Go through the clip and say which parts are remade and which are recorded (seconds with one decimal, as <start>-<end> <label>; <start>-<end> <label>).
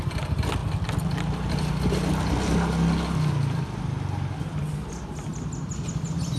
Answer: 0.0-6.4 recorded